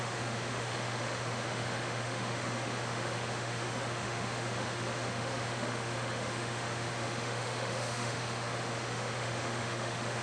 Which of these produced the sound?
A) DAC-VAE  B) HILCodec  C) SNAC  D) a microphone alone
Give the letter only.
A